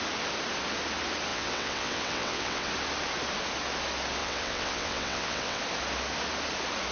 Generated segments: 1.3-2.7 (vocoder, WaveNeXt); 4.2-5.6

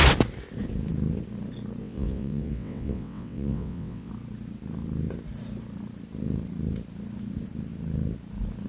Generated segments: 1.8-4.1 (vocoder, WaveNeXt)

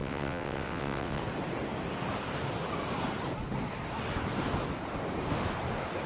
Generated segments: 0.0-1.2 (vocoder, WaveNeXt)